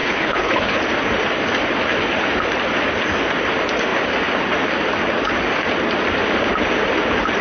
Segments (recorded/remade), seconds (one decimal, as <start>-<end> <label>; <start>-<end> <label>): 0.0-0.8 remade; 0.8-7.4 recorded